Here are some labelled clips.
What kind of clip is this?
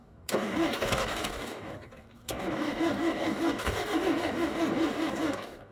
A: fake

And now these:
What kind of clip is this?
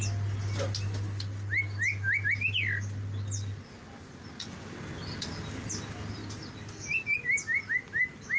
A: real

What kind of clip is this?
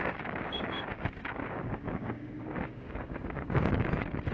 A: fake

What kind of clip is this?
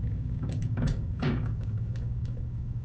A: fake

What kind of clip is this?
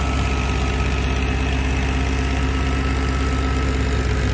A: real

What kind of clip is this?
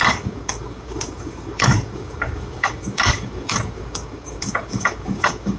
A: fake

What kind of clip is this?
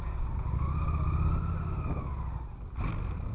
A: real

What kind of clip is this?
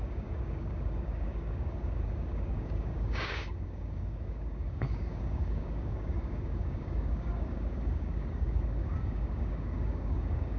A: fake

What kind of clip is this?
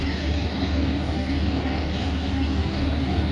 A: fake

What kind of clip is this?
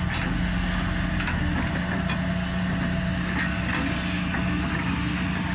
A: real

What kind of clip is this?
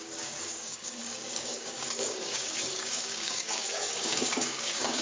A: fake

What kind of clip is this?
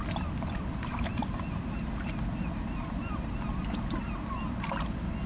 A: real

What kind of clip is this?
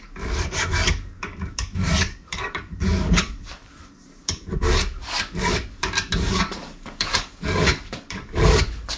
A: fake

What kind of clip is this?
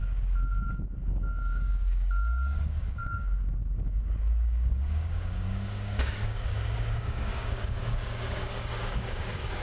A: fake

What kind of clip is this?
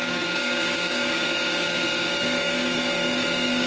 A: fake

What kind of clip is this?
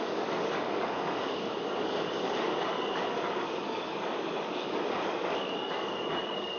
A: fake